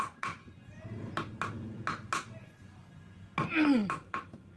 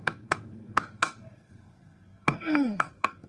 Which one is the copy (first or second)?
second